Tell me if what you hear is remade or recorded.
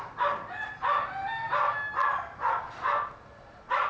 recorded